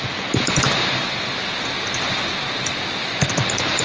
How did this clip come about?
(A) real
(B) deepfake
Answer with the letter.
A